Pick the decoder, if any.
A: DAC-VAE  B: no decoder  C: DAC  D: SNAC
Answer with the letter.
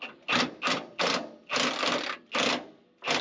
B